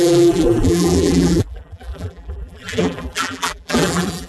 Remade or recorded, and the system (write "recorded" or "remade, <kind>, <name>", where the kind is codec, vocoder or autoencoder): remade, vocoder, BigVGAN v2